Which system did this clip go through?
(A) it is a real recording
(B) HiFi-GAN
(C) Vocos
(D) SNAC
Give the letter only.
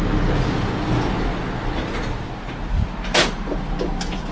A